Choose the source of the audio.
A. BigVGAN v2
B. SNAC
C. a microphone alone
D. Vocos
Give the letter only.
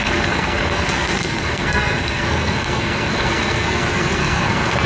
B